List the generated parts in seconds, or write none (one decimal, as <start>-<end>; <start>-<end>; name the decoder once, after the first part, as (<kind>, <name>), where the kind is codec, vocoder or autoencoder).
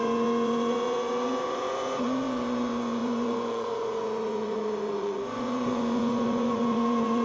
0.0-7.2 (vocoder, Vocos)